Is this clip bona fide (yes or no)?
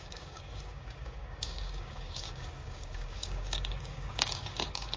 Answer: no